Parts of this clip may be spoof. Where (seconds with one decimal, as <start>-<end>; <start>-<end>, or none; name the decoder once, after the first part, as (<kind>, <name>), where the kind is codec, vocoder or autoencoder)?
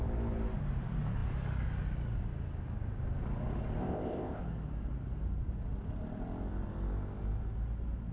3.8-4.4 (codec, ZipCodec)